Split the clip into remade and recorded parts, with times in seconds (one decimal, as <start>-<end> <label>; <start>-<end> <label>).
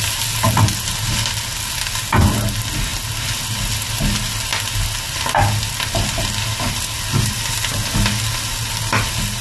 0.0-9.4 recorded